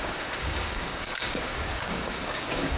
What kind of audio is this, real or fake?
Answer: fake